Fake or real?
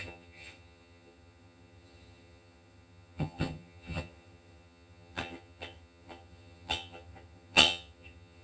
fake